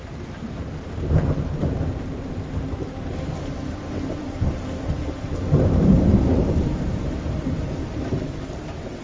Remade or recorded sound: remade